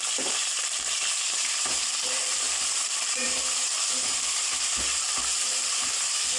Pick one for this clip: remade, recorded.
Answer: remade